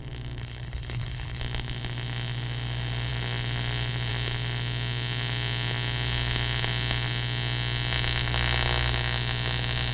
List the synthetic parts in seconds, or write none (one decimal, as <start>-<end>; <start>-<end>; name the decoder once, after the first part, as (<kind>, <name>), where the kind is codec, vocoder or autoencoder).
0.4-1.4 (codec, HILCodec)